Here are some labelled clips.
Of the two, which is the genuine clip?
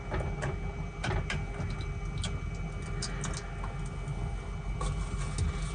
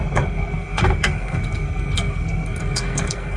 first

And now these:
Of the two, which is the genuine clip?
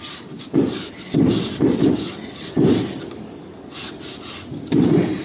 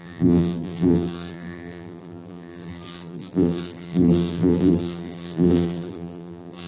first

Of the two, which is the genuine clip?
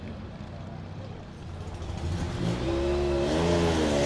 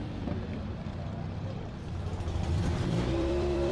first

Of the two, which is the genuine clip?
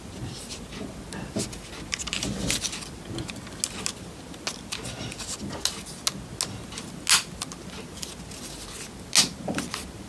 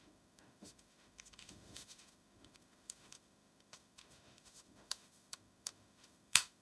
first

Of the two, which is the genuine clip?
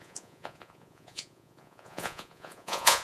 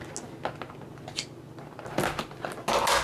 second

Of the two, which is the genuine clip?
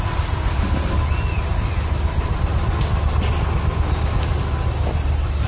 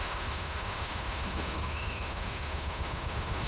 first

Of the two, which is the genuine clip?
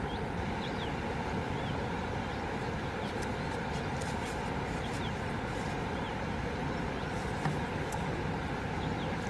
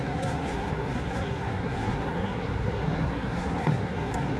first